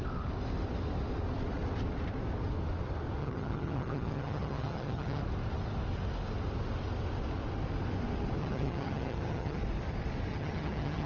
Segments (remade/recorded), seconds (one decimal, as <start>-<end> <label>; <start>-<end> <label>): 0.0-3.2 recorded; 3.2-5.2 remade; 5.2-8.4 recorded; 8.4-9.6 remade; 9.6-10.3 recorded; 10.3-11.1 remade